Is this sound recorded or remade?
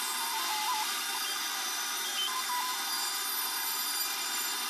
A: remade